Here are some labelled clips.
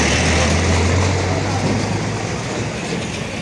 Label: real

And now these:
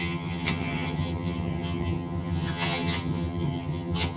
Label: fake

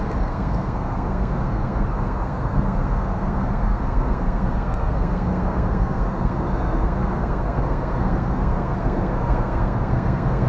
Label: fake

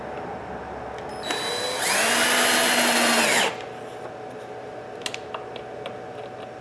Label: real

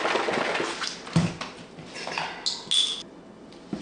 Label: real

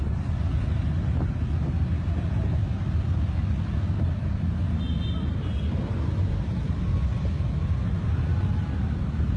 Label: real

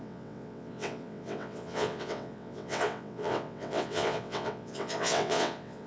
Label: fake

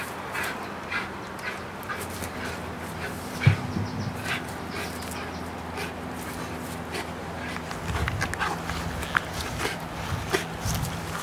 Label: real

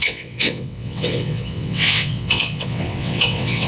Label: fake